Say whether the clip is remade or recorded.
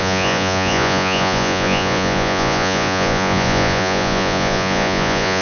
remade